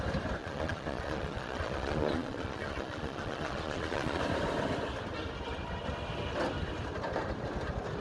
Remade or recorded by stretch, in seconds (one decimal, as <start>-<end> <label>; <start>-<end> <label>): 0.0-0.4 recorded; 0.4-4.2 remade; 4.2-8.0 recorded